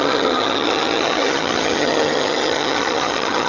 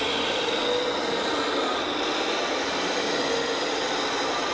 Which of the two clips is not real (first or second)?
first